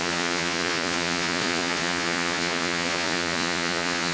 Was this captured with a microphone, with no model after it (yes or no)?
no